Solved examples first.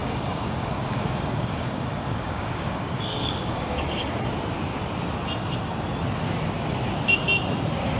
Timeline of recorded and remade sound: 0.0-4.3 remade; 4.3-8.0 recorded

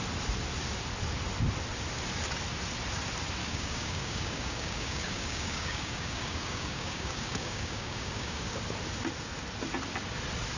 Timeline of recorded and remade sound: 0.0-3.4 recorded; 3.4-8.6 remade; 8.6-10.6 recorded

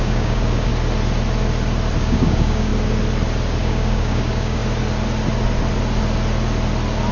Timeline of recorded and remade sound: 0.0-0.7 remade; 0.7-2.0 recorded; 2.0-2.7 remade; 2.7-3.6 recorded; 3.6-4.6 remade; 4.6-7.1 recorded

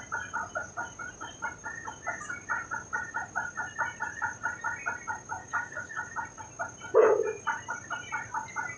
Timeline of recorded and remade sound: 0.0-5.4 recorded; 5.4-6.0 remade; 6.0-8.8 recorded